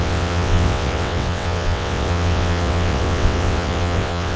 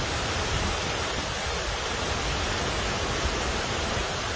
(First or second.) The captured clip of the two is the second